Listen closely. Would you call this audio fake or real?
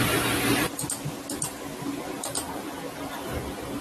real